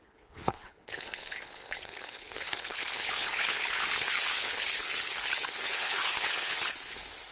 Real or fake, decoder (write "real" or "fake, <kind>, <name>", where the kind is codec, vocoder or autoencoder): fake, codec, HILCodec